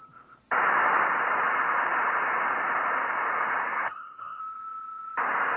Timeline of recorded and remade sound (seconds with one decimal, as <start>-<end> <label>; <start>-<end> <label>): 0.0-3.6 recorded; 3.6-4.4 remade; 4.4-5.6 recorded